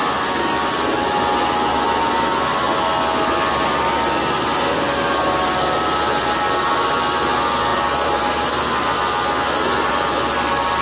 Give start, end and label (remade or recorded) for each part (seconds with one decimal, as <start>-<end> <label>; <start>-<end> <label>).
0.0-10.8 recorded